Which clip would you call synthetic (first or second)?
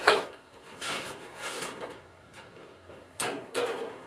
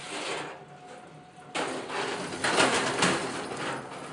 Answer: first